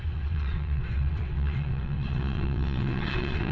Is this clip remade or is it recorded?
remade